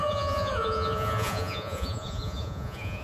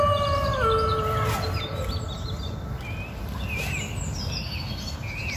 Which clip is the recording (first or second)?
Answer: second